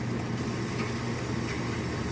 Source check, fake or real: real